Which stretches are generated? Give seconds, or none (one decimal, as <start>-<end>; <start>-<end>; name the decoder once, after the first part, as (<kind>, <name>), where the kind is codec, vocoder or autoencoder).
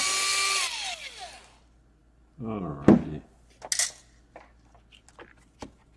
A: none